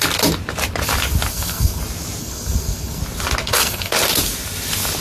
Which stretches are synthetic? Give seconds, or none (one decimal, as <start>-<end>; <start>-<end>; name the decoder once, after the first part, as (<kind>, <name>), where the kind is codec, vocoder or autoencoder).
1.3-1.8 (codec, SNAC); 2.2-3.0; 3.4-3.9